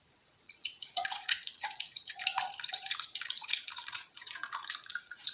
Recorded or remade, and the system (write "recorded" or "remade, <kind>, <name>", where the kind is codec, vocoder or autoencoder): remade, vocoder, Vocos